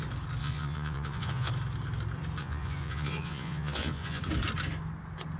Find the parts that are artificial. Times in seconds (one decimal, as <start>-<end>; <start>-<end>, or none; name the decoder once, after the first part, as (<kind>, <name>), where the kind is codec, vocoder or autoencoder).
0.4-1.5 (vocoder, Vocos); 2.4-4.2